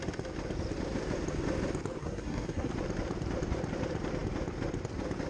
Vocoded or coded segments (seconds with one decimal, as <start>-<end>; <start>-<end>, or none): 2.0-2.7

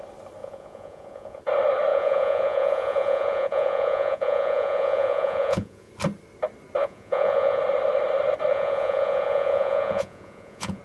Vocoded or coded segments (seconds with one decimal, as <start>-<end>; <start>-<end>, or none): 0.4-1.4; 1.9-5.9; 6.8-7.6; 8.5-10.8

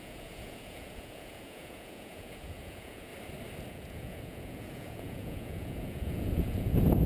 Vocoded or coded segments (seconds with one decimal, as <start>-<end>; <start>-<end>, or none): 0.0-3.1; 3.7-7.1

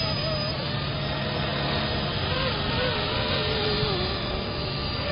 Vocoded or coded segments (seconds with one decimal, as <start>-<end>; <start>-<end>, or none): none

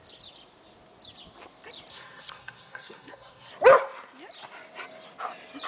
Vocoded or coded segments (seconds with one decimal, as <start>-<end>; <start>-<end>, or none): 1.9-3.5